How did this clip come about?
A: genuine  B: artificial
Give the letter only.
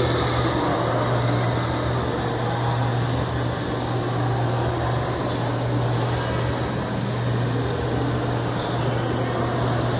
A